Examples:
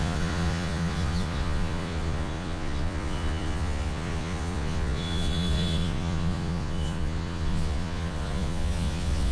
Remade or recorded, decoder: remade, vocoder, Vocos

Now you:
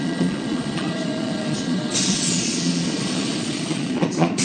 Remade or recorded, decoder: remade, vocoder, Vocos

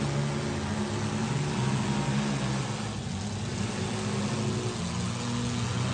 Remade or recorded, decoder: recorded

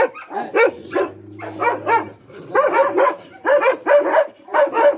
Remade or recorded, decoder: recorded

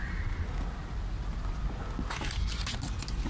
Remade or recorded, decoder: recorded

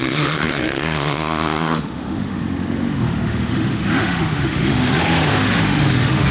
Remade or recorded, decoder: remade, autoencoder, DAC-VAE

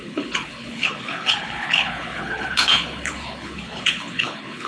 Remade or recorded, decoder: remade, codec, HILCodec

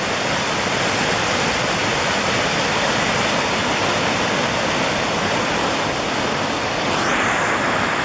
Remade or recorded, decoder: recorded